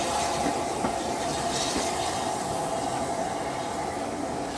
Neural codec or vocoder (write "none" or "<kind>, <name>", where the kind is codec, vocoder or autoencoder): none